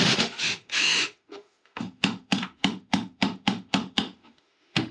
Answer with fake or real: fake